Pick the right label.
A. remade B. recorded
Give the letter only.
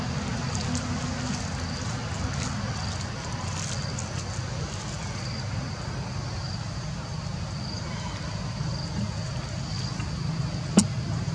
B